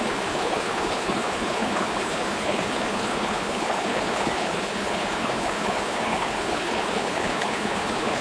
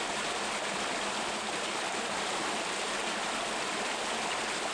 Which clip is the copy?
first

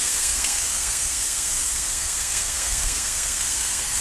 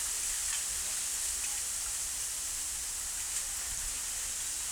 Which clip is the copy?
first